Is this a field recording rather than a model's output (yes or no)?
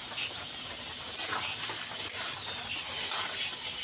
yes